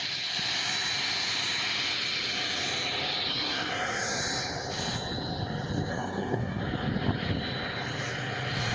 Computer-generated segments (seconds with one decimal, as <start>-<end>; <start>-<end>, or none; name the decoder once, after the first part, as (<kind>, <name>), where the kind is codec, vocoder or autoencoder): 3.3-4.2 (codec, SNAC); 5.9-6.6